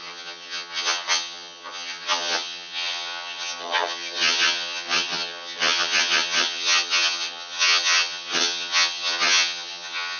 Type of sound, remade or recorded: remade